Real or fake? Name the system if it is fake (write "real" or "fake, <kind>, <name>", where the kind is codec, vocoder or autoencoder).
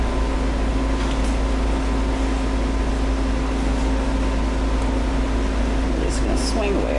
real